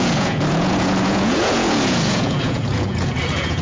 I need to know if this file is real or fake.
fake